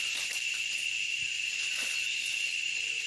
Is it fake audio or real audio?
real